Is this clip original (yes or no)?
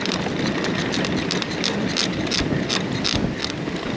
yes